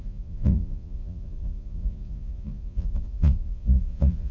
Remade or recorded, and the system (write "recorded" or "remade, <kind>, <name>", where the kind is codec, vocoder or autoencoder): remade, vocoder, Vocos